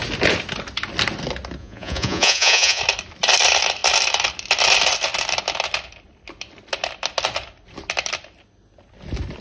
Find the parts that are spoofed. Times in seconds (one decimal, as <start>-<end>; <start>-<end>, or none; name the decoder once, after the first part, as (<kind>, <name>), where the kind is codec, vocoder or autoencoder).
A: 1.6-2.8 (vocoder, Vocos)